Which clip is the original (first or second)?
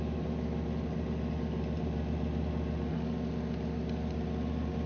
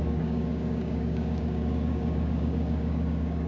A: first